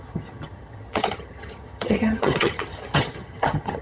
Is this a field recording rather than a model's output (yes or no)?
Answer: no